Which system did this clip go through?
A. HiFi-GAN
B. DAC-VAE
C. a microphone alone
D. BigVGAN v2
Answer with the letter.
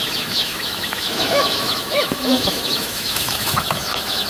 B